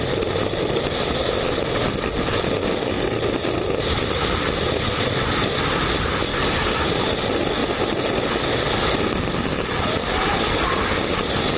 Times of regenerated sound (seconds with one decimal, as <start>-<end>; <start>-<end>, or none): 2.7-3.2; 6.3-6.9